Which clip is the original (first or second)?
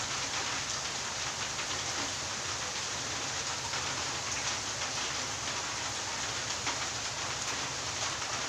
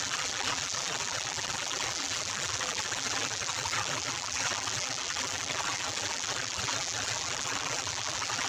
first